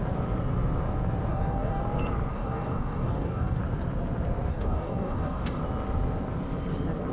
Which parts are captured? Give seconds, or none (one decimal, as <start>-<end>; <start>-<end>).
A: 0.0-1.3; 1.8-2.3; 3.6-4.5; 5.6-7.1